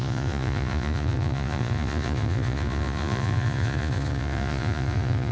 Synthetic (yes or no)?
yes